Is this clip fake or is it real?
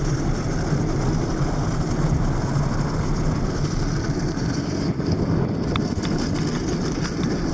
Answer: real